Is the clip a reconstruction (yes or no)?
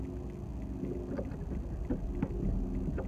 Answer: no